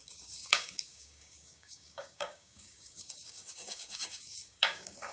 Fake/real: fake